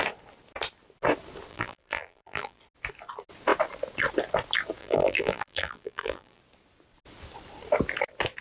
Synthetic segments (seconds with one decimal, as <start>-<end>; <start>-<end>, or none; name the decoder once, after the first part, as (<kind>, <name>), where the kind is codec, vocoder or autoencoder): 1.5-2.6 (vocoder, BigVGAN v2); 4.8-6.4